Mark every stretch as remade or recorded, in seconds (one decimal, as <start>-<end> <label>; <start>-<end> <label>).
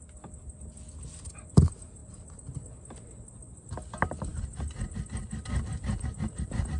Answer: 0.0-6.8 recorded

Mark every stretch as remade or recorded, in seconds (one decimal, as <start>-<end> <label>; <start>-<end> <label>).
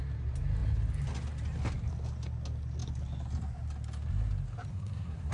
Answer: 0.0-4.7 recorded; 4.7-5.3 remade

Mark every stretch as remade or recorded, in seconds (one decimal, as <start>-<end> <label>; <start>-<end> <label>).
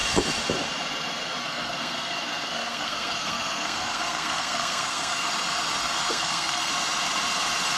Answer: 0.0-1.4 recorded; 1.4-5.3 remade; 5.3-5.8 recorded; 5.8-6.7 remade; 6.7-7.8 recorded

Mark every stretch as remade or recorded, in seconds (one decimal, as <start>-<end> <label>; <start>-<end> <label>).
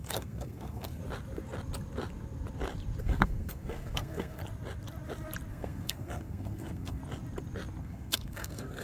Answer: 0.0-1.0 remade; 1.0-3.0 recorded; 3.0-4.4 remade; 4.4-5.5 recorded; 5.5-7.0 remade; 7.0-7.8 recorded; 7.8-8.8 remade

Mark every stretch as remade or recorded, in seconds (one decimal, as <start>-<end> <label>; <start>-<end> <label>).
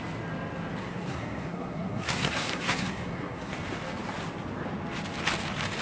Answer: 0.0-0.8 recorded; 0.8-3.5 remade; 3.5-5.8 recorded